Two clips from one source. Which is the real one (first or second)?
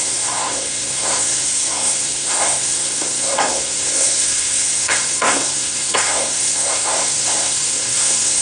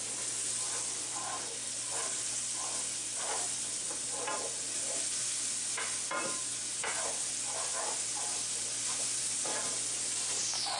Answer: second